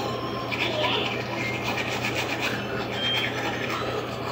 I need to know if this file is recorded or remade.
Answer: recorded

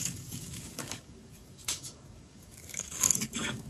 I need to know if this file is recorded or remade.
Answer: remade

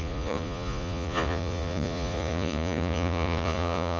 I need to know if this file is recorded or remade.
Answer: remade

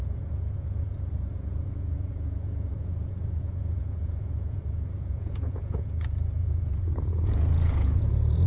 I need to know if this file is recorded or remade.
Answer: remade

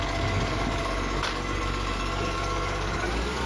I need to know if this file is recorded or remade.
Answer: remade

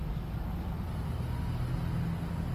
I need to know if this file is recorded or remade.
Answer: recorded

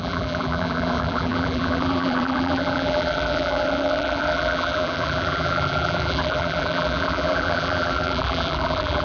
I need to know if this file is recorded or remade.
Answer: remade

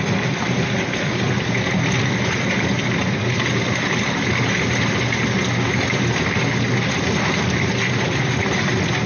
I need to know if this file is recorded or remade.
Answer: recorded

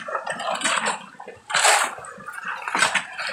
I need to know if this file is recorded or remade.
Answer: recorded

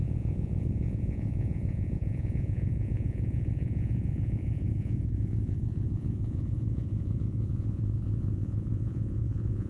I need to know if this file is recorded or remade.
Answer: remade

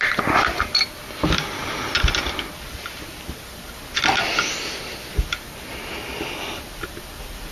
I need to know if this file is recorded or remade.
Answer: recorded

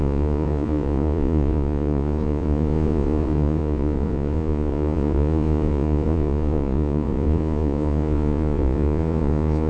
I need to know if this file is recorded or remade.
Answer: remade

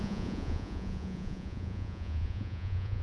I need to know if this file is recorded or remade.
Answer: remade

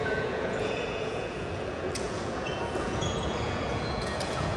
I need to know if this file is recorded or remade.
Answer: remade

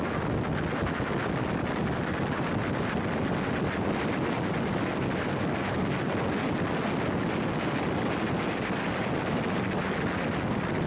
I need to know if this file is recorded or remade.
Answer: recorded